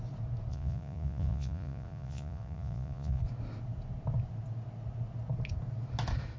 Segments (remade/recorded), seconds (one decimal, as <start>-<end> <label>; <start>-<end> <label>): 0.0-0.5 recorded; 0.5-3.2 remade; 3.2-6.4 recorded